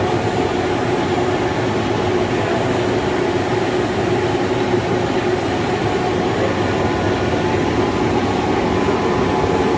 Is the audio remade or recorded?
recorded